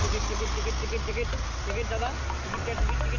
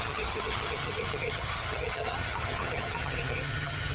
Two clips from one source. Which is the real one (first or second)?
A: first